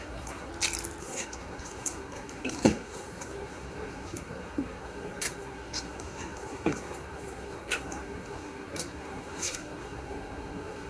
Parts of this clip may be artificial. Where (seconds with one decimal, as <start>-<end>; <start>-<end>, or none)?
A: 0.0-0.5; 1.0-10.9